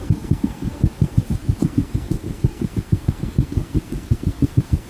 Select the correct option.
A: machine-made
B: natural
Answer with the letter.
A